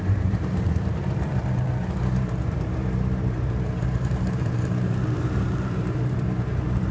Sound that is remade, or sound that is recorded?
remade